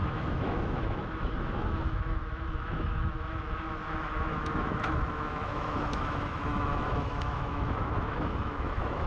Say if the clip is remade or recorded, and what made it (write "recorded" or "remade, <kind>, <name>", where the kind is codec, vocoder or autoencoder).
remade, autoencoder, DAC-VAE